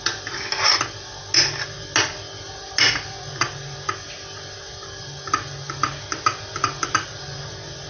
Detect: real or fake real